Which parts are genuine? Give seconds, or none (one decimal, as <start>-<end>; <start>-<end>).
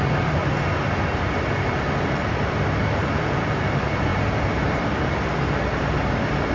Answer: 0.4-1.1